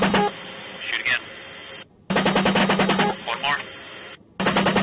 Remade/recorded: recorded